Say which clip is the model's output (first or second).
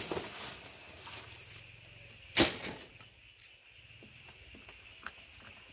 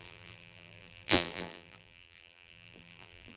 second